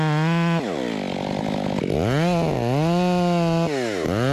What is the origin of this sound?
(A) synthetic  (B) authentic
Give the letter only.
B